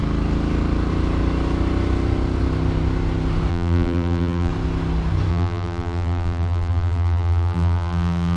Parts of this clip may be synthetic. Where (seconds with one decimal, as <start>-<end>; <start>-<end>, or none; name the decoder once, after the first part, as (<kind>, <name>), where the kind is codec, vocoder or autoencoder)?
3.5-4.5 (vocoder, BigVGAN v2); 5.3-8.4